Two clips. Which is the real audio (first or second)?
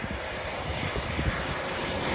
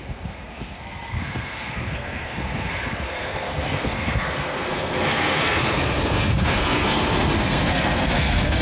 first